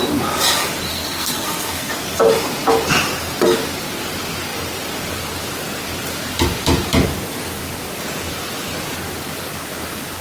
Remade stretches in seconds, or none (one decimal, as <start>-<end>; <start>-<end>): 0.9-1.9